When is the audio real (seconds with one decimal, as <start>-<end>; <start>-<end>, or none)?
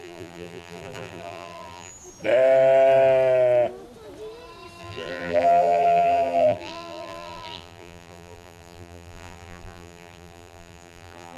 1.9-4.8